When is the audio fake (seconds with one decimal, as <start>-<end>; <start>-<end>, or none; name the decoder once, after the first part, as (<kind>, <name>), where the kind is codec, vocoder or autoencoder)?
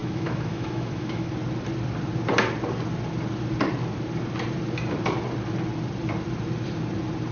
0.0-1.3 (autoencoder, DAC-VAE)